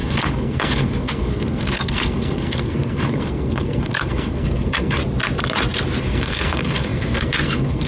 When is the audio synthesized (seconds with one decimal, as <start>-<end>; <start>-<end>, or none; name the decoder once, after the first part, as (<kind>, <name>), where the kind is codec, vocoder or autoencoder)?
0.0-5.0 (codec, SNAC); 6.0-7.9